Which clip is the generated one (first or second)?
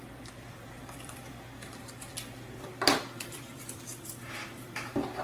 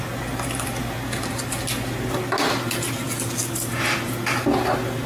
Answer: first